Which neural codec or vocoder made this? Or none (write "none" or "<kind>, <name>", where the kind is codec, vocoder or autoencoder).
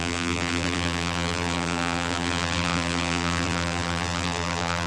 vocoder, BigVGAN v2